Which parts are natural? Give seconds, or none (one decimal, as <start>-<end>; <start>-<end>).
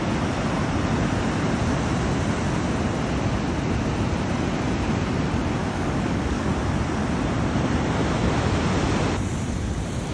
0.0-5.6; 6.5-10.1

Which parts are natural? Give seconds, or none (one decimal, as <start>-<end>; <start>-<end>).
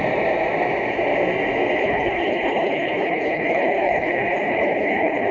0.0-1.8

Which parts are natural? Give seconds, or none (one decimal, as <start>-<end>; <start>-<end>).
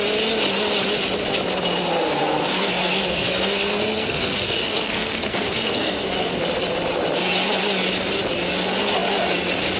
0.0-2.2; 6.4-9.8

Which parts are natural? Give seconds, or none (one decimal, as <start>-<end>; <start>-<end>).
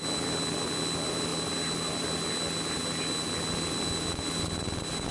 0.0-5.1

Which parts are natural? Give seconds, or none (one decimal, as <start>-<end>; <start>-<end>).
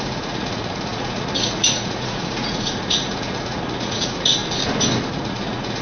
4.4-5.1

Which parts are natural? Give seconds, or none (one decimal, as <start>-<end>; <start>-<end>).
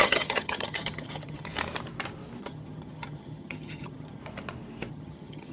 1.5-2.4; 4.2-4.9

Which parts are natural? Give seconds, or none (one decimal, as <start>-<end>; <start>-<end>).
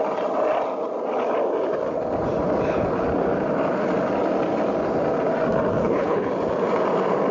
0.0-5.8; 6.3-7.3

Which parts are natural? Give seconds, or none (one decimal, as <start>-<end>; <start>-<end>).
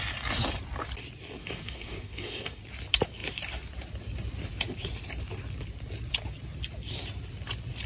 0.0-1.4; 2.6-7.9